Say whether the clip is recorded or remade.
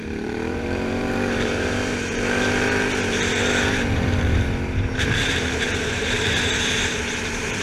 remade